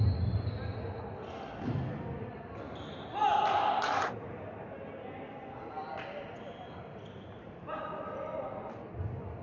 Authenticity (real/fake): real